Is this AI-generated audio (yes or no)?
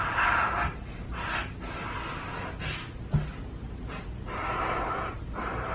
no